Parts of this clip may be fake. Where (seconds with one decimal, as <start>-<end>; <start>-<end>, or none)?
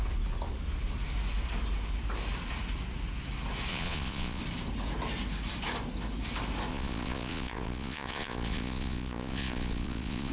3.7-4.4; 6.7-10.3